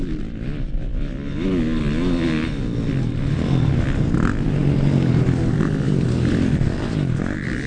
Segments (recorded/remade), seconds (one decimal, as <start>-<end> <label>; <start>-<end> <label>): 0.0-7.7 recorded